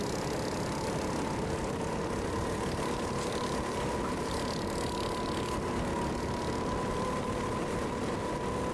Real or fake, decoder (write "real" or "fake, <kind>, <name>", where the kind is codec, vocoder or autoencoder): real